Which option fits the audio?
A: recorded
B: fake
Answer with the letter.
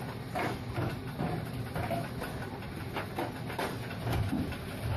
A